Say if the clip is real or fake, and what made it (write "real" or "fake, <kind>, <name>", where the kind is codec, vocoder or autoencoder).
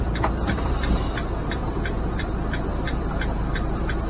fake, vocoder, BigVGAN v2